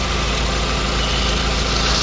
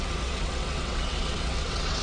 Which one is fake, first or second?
second